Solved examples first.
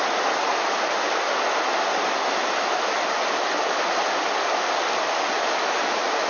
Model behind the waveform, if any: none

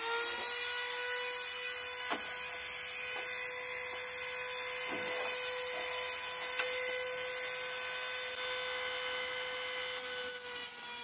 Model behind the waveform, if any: none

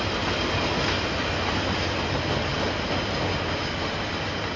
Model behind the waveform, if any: none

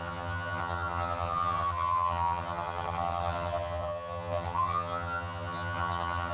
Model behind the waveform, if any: vocoder, HiFi-GAN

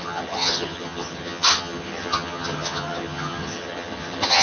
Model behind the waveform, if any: vocoder, HiFi-GAN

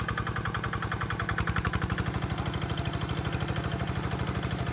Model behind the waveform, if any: none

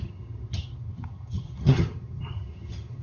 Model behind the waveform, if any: vocoder, HiFi-GAN